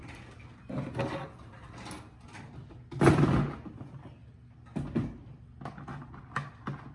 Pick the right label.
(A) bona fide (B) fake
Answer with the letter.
A